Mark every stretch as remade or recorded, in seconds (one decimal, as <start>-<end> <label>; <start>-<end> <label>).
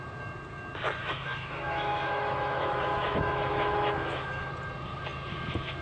0.0-1.0 recorded; 1.0-4.5 remade; 4.5-5.8 recorded